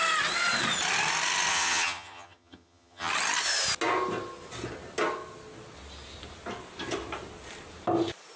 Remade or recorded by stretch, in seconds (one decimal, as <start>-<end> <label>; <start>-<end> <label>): 0.0-1.5 recorded; 1.5-3.1 remade; 3.1-8.4 recorded